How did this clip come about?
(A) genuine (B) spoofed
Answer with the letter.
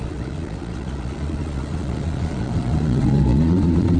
B